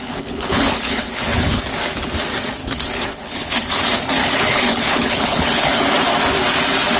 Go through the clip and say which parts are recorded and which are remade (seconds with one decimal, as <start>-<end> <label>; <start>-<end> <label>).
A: 0.0-1.6 remade; 1.6-2.6 recorded; 2.6-3.8 remade; 3.8-4.2 recorded; 4.2-5.8 remade; 5.8-7.0 recorded